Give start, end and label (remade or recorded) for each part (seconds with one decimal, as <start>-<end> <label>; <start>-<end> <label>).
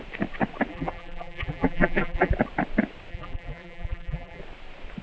0.0-0.7 recorded; 0.7-2.3 remade; 2.3-3.1 recorded; 3.1-4.4 remade; 4.4-5.0 recorded